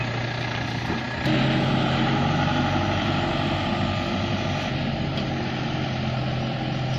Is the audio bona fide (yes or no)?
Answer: yes